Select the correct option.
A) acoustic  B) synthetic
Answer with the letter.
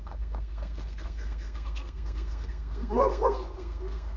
B